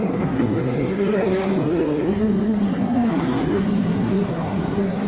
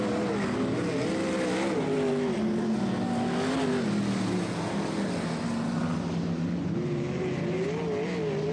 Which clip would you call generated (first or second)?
first